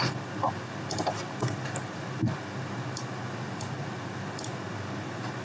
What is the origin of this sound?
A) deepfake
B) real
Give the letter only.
B